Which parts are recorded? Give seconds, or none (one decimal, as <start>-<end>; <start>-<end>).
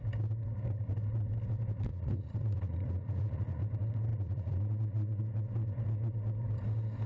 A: 0.0-1.9; 3.6-4.1; 5.2-7.1